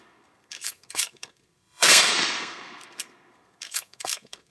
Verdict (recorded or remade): remade